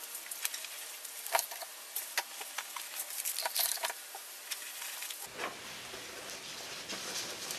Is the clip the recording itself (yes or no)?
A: yes